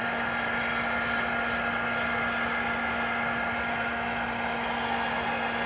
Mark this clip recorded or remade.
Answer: recorded